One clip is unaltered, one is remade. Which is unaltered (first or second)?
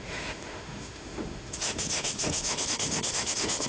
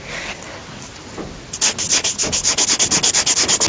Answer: second